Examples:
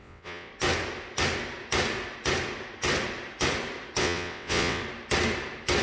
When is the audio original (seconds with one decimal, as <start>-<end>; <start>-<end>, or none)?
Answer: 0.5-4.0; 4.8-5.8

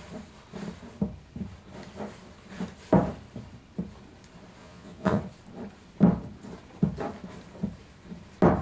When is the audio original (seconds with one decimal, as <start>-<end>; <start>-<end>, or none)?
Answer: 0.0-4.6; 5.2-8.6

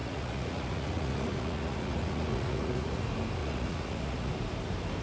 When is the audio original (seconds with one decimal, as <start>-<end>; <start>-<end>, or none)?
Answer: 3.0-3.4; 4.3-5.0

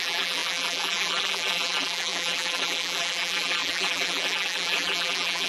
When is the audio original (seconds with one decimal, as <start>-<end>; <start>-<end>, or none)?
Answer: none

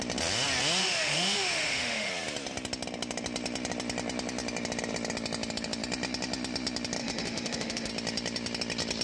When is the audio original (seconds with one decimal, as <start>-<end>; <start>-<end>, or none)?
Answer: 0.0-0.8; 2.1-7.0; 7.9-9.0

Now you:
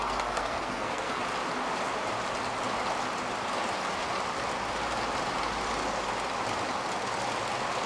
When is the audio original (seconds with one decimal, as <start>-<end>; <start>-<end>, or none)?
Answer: 1.2-7.9

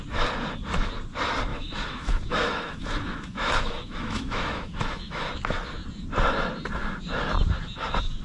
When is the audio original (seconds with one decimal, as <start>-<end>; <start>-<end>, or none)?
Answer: 0.0-1.5; 5.3-8.2